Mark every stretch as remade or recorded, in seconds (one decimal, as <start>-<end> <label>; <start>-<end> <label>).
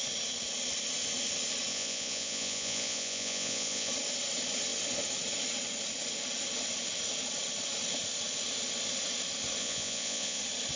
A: 0.0-1.7 recorded; 1.7-3.9 remade; 3.9-9.6 recorded; 9.6-10.4 remade; 10.4-10.8 recorded